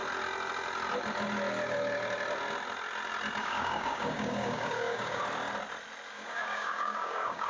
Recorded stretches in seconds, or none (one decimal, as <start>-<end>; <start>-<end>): 0.0-3.4; 5.2-6.1